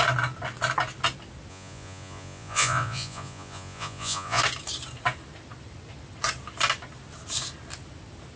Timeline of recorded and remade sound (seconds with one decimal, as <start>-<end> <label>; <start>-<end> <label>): 0.0-1.5 recorded; 1.5-4.4 remade; 4.4-8.4 recorded